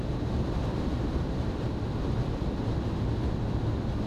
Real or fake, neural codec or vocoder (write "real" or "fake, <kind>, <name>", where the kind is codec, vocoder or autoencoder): real